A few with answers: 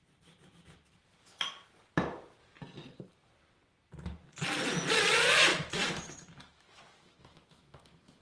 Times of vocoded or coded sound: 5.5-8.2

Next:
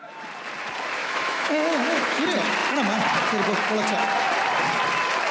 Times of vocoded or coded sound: 1.0-2.2

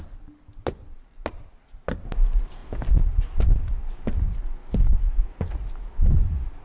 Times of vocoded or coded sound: none

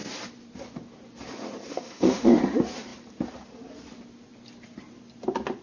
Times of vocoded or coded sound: 1.7-2.4

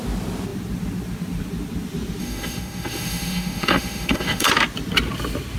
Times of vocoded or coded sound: 2.2-4.5

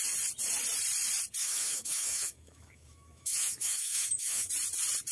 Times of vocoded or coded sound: 1.4-4.5

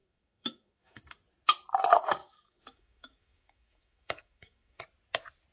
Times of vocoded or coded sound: 0.0-1.0; 2.2-4.8